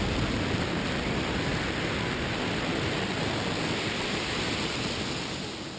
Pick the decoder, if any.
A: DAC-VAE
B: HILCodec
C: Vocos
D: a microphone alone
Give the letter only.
D